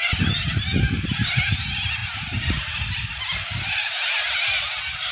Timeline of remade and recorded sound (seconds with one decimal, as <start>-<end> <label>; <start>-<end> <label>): 0.0-2.0 recorded; 2.0-2.8 remade; 2.8-5.1 recorded